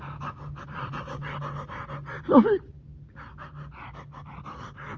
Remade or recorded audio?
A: recorded